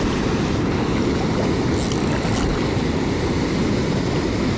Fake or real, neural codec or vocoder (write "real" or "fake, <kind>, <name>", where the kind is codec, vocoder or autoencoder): real